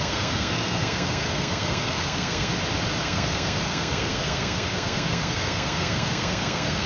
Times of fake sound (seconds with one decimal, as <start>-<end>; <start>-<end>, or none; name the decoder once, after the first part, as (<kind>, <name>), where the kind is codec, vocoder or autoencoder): 0.0-2.5 (codec, SNAC); 3.0-6.9